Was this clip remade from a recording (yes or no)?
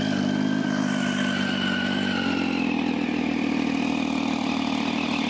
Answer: no